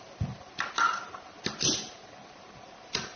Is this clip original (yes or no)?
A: yes